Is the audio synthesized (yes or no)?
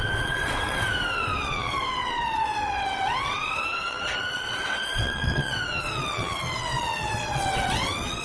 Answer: yes